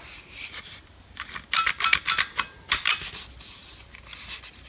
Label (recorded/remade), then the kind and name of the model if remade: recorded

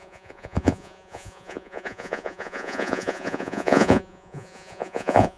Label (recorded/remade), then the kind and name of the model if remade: remade, vocoder, Vocos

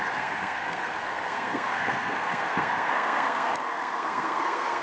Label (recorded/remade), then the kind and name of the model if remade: remade, codec, SNAC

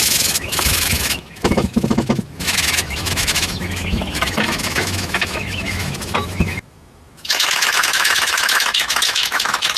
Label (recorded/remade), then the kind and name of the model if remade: remade, autoencoder, DAC-VAE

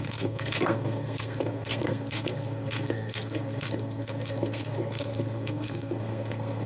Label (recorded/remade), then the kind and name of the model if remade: remade, codec, SNAC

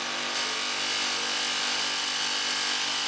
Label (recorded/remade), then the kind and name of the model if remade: recorded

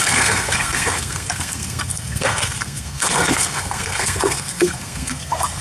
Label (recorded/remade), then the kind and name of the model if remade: remade, codec, SNAC